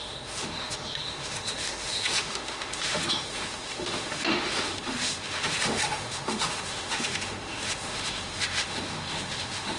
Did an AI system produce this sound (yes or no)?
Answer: yes